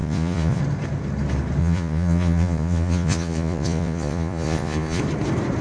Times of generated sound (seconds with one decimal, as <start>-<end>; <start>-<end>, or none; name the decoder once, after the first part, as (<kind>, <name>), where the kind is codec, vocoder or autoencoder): 0.0-0.6 (vocoder, Vocos); 1.6-5.0